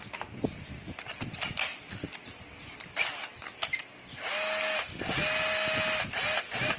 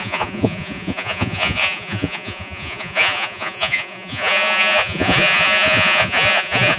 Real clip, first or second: first